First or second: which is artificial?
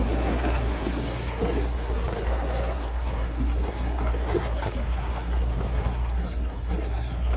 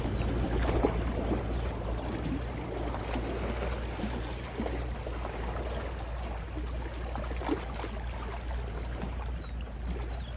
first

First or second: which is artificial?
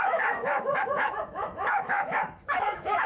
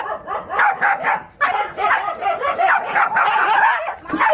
first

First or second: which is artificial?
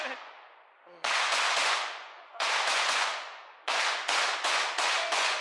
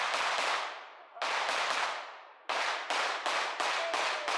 first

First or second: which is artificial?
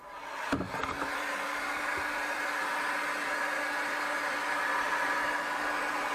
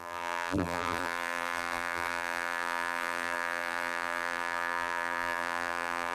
second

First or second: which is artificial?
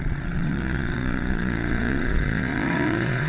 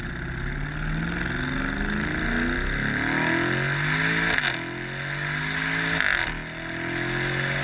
first